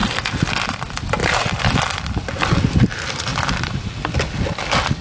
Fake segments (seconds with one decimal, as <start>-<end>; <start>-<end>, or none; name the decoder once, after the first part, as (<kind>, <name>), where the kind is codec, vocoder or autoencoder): none